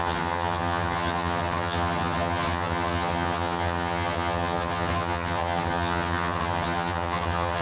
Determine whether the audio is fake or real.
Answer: fake